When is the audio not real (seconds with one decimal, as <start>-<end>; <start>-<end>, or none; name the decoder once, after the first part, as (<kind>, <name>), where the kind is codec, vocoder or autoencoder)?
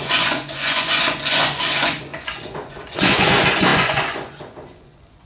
0.0-5.3 (vocoder, Vocos)